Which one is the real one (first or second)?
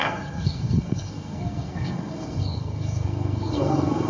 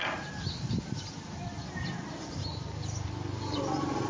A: second